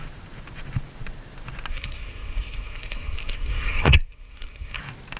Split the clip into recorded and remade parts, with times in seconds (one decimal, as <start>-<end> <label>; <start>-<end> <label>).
0.0-1.7 recorded; 1.7-4.8 remade; 4.8-5.2 recorded